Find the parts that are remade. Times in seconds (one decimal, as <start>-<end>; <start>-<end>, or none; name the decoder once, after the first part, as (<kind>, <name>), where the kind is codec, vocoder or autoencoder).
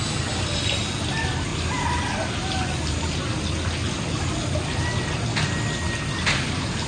none